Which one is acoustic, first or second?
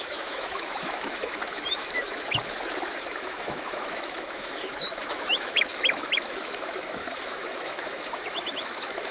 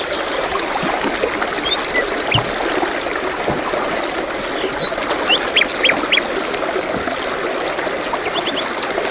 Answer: second